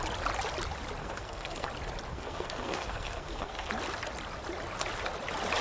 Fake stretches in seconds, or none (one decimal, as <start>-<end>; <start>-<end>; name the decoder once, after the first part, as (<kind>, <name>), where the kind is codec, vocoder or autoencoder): 1.0-1.7 (codec, SNAC); 2.1-3.7